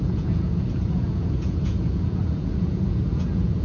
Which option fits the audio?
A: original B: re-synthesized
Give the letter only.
B